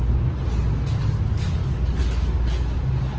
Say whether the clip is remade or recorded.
recorded